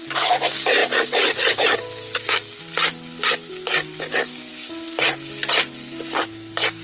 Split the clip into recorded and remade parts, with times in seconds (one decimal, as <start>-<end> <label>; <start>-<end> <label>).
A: 0.0-6.8 recorded